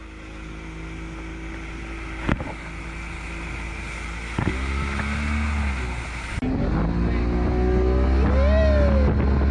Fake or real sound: real